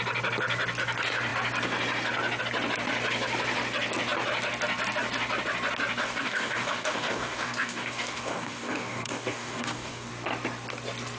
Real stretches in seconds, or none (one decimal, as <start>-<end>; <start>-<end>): 0.0-6.0; 10.1-11.2